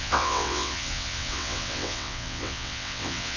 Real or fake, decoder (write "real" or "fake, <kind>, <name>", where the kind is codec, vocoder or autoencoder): fake, vocoder, WaveNeXt